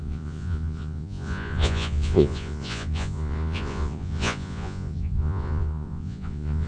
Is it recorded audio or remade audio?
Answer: remade